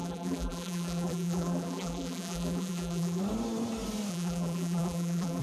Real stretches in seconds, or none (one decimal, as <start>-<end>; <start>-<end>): 3.2-4.1